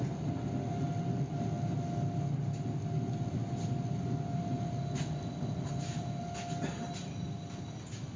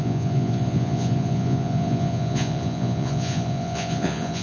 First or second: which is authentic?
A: first